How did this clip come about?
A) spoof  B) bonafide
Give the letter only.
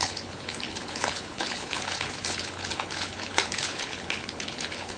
A